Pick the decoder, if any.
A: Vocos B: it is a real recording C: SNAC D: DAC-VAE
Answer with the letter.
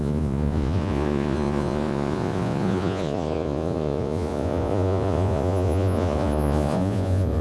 A